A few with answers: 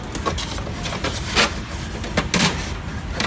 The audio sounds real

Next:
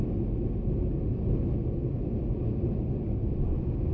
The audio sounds real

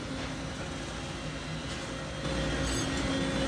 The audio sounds real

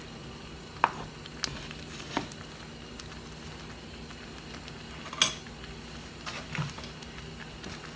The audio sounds real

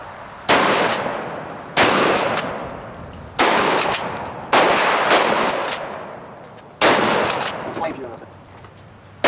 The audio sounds real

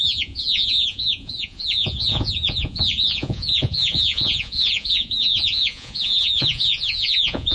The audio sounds fake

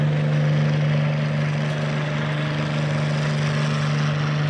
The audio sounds real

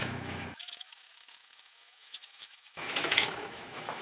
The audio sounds fake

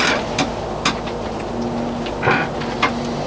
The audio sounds real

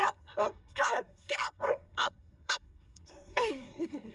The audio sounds fake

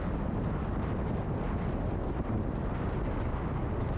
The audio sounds real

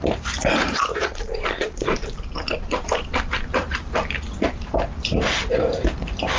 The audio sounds fake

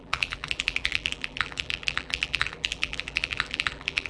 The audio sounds fake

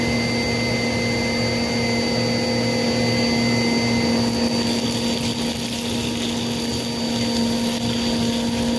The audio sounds real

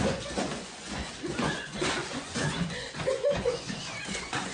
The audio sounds fake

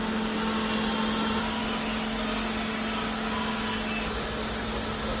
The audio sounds real